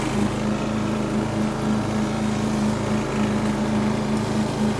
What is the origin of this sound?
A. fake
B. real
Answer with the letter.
B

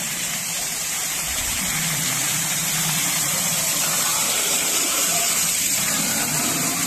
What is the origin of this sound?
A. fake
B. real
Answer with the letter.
A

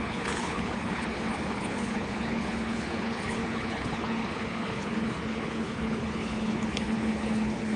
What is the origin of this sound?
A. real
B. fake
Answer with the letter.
B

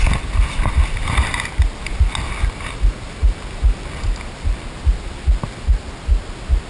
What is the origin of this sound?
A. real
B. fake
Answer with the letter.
A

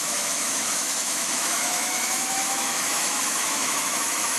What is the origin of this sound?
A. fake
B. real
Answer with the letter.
A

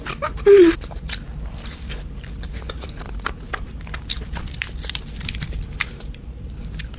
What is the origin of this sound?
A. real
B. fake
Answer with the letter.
B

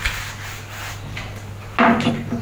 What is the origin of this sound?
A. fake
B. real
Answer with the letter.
B